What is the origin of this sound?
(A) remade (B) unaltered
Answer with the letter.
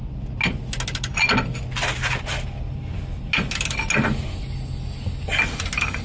B